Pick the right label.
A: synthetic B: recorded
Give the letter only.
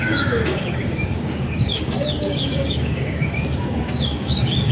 A